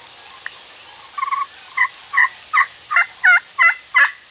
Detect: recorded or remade recorded